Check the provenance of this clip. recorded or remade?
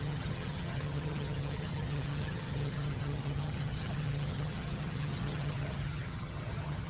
remade